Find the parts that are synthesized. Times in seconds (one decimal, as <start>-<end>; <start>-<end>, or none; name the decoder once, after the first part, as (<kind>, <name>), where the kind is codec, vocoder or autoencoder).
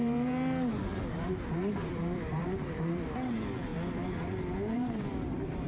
0.0-3.7 (vocoder, BigVGAN v2); 4.7-5.7